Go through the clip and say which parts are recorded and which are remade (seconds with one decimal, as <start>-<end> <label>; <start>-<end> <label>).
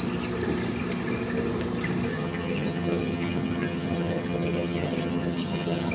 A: 0.0-2.1 recorded; 2.1-5.9 remade